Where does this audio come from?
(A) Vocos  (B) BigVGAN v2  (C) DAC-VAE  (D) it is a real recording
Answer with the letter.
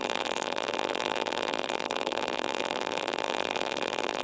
B